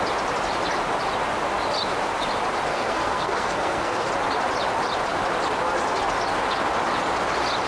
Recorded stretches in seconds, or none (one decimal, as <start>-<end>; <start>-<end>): 0.0-2.7; 4.1-7.7